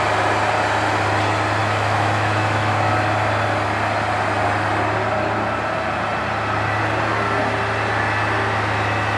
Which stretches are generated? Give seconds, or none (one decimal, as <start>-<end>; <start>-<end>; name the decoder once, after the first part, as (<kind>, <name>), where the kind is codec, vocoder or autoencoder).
1.6-2.9 (autoencoder, DAC-VAE)